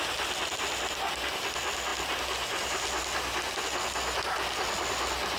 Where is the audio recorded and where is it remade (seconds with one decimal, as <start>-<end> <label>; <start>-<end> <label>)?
0.0-5.4 recorded